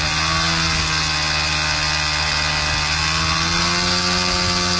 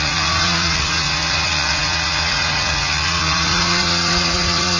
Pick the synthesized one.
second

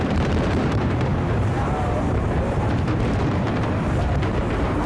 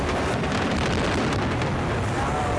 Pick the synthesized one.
first